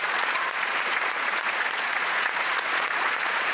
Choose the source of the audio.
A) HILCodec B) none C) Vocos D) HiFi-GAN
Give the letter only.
C